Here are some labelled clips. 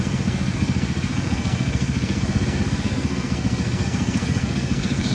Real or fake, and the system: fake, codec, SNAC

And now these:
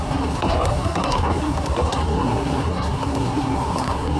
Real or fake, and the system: fake, codec, SNAC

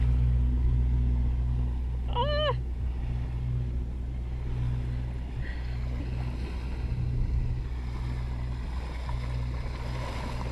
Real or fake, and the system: real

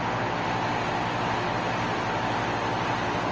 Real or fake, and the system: real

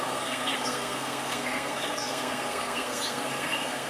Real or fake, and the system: fake, codec, SNAC